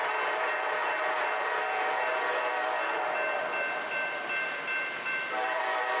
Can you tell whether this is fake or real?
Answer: fake